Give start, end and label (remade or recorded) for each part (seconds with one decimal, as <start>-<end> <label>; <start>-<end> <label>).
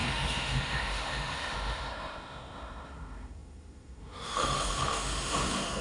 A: 0.0-5.8 remade